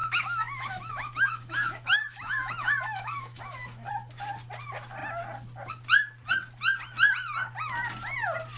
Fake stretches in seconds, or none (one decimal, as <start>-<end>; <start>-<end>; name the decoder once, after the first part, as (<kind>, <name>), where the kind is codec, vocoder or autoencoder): 0.0-3.9 (autoencoder, DAC-VAE)